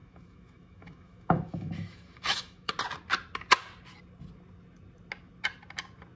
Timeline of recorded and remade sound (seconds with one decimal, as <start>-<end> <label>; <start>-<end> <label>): 0.0-2.7 remade; 2.7-6.2 recorded